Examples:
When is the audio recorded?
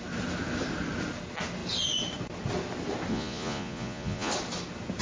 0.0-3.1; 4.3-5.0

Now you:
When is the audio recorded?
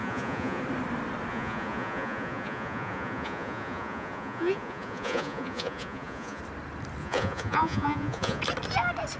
0.6-1.3; 6.4-7.0; 8.4-9.2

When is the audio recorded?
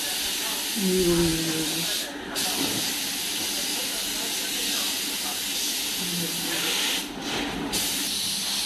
0.0-8.7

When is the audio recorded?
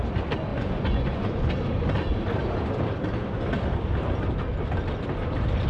0.0-0.5; 1.5-5.7